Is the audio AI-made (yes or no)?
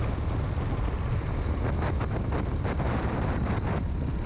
no